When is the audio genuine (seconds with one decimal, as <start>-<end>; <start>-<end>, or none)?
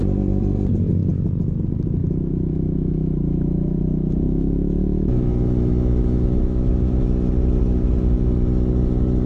0.0-2.0; 7.0-9.3